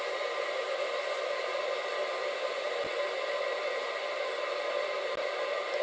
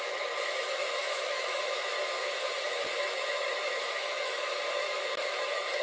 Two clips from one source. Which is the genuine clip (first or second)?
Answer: first